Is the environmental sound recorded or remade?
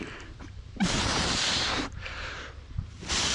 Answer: remade